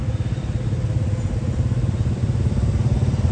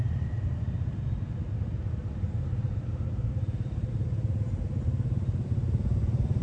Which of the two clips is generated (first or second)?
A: second